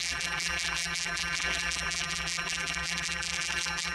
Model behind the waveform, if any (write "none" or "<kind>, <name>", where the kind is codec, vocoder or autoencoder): vocoder, BigVGAN v2